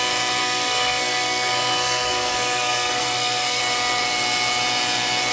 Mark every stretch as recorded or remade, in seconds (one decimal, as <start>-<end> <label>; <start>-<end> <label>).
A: 0.0-0.4 recorded; 0.4-3.6 remade; 3.6-5.3 recorded